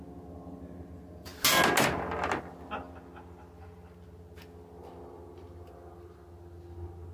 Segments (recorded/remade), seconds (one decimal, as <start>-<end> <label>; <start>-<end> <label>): 0.0-7.1 recorded